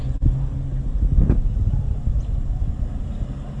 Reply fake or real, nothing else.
real